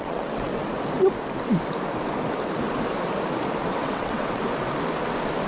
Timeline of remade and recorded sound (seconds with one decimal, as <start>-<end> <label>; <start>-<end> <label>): 0.0-0.5 remade; 0.5-3.8 recorded; 3.8-4.4 remade; 4.4-5.5 recorded